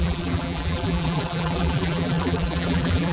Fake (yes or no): yes